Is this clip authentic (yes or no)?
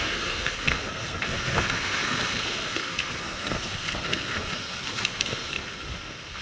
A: no